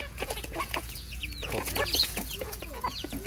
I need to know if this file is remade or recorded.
remade